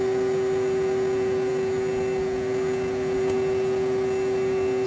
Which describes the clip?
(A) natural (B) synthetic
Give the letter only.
A